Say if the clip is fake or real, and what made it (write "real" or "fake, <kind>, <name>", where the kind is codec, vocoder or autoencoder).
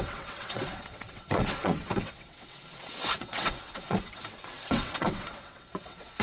fake, vocoder, WaveNeXt